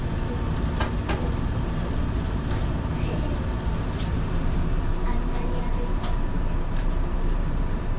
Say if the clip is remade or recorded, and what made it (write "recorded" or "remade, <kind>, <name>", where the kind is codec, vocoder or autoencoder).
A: remade, vocoder, BigVGAN v2